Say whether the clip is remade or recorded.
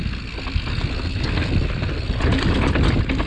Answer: recorded